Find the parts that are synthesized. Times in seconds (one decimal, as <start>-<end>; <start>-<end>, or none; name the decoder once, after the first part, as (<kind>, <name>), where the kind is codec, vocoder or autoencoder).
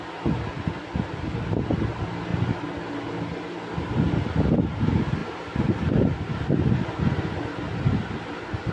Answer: none